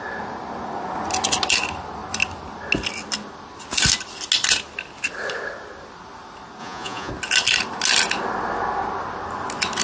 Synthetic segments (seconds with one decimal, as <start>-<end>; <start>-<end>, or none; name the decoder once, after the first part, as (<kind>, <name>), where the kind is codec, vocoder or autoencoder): 6.6-7.1 (vocoder, Vocos)